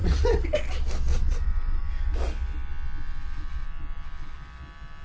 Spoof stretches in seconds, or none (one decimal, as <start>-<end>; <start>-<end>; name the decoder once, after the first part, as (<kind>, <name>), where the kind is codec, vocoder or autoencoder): 0.0-0.6 (vocoder, Vocos); 1.1-1.8

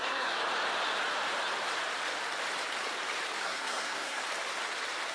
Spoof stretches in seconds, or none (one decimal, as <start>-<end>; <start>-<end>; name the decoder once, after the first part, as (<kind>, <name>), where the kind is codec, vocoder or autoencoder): 0.0-0.4 (codec, SNAC); 3.4-4.2

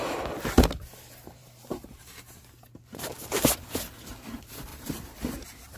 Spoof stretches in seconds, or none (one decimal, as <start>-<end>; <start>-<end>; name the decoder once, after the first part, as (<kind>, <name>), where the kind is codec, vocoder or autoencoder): 1.4-2.4 (vocoder, BigVGAN v2); 2.9-3.4; 4.7-5.3

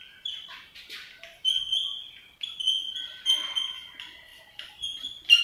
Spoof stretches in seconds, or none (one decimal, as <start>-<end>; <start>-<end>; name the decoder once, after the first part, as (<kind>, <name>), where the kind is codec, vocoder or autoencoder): 2.0-2.9 (vocoder, BigVGAN v2); 4.3-5.4

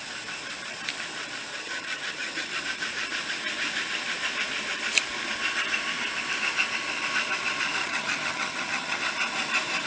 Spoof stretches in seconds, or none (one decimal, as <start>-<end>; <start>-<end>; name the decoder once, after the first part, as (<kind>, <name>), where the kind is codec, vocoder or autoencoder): 1.5-2.6 (vocoder, HiFi-GAN); 7.8-9.0

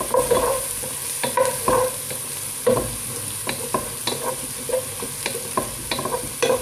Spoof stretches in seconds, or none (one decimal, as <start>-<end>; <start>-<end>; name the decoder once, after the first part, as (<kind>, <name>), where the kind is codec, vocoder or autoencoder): none

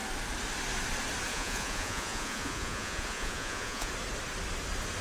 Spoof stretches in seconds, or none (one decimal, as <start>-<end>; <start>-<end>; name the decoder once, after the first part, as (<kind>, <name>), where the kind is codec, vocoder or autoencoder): 1.3-3.9 (vocoder, Vocos)